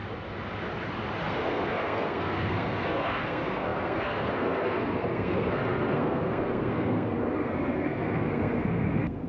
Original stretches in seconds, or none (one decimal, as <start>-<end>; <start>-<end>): 0.0-1.2